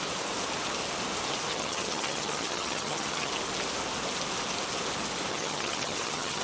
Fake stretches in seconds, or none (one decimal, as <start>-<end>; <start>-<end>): 1.5-3.3; 5.3-6.4